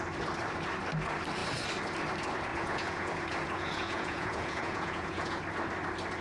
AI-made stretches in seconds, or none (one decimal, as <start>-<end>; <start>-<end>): 2.5-5.4